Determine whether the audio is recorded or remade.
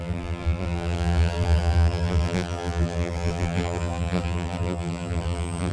remade